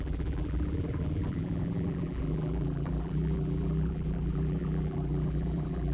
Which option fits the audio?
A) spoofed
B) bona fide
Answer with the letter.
A